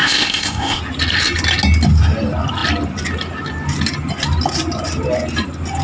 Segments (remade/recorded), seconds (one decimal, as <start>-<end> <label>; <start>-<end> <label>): 0.0-0.8 remade; 0.8-5.8 recorded